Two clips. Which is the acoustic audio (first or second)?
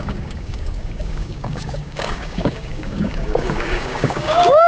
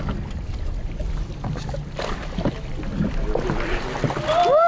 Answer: second